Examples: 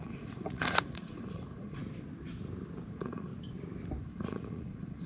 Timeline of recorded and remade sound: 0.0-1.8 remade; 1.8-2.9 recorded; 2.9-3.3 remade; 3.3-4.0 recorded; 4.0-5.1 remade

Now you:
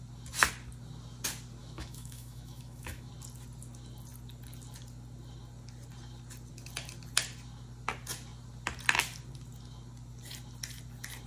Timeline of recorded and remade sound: 0.0-1.6 recorded; 1.6-3.1 remade; 3.1-11.3 recorded